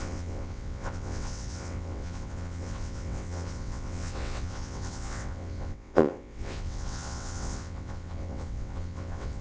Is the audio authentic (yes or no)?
no